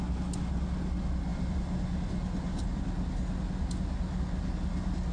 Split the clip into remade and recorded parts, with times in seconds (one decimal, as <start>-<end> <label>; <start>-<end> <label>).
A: 0.0-5.1 recorded